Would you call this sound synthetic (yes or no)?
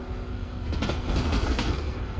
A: yes